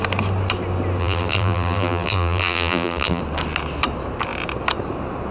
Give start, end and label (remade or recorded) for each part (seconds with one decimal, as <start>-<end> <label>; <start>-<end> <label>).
0.0-1.0 recorded; 1.0-3.2 remade; 3.2-5.3 recorded